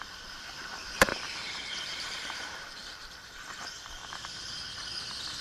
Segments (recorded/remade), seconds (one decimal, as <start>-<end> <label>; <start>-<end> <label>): 0.0-1.1 remade; 1.1-1.8 recorded; 1.8-4.0 remade; 4.0-5.4 recorded